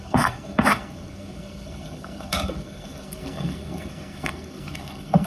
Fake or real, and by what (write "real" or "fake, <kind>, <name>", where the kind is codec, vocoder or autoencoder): fake, codec, SNAC